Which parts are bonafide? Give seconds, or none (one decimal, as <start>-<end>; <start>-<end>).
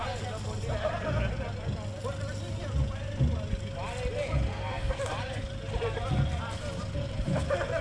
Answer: 0.0-4.5; 5.0-7.8